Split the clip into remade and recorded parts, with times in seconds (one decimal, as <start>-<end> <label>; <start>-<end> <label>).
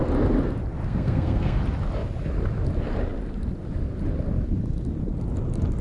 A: 0.0-0.8 recorded; 0.8-1.6 remade; 1.6-5.8 recorded